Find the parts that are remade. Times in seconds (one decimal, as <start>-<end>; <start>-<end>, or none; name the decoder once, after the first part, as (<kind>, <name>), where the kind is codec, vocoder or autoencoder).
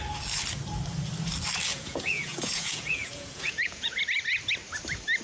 1.7-4.0 (vocoder, Vocos)